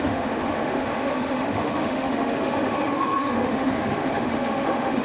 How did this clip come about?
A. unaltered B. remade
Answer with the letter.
B